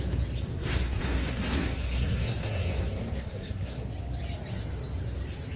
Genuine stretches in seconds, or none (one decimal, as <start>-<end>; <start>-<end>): 0.0-0.5; 3.9-5.6